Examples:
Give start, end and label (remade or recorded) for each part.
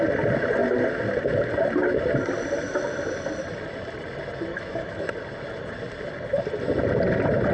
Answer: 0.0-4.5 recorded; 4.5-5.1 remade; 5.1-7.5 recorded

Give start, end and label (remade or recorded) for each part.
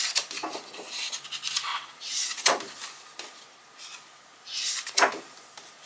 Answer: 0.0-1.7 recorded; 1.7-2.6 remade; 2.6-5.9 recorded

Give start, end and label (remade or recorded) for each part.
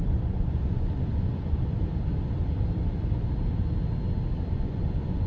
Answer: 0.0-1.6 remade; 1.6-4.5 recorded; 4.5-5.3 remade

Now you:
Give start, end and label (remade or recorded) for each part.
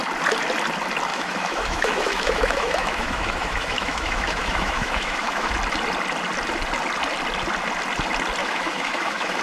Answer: 0.0-1.1 recorded; 1.1-5.5 remade; 5.5-8.4 recorded; 8.4-9.4 remade